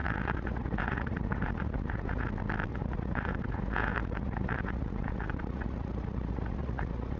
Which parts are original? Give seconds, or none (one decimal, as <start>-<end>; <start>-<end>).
2.3-2.7